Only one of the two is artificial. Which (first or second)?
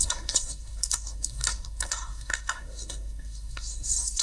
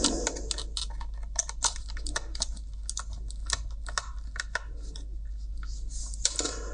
first